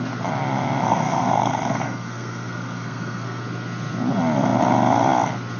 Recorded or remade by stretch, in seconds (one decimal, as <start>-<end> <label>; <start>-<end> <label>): 0.0-0.9 recorded; 0.9-3.4 remade; 3.4-5.6 recorded